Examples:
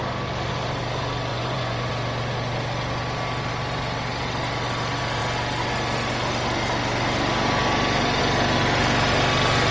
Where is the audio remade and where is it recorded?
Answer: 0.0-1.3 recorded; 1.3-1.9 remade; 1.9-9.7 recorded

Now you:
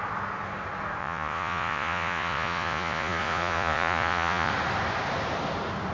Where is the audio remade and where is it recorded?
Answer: 0.0-1.0 recorded; 1.0-4.5 remade; 4.5-5.9 recorded

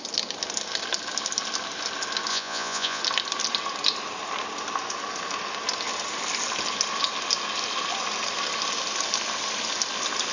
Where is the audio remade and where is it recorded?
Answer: 0.0-2.3 recorded; 2.3-3.0 remade; 3.0-10.3 recorded

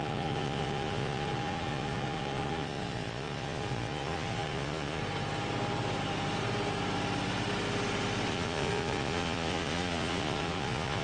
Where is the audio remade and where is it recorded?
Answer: 0.0-5.0 remade; 5.0-8.3 recorded; 8.3-11.0 remade